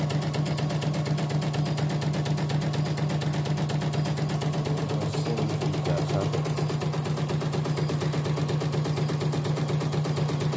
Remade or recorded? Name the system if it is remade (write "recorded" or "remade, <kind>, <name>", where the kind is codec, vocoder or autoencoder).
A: recorded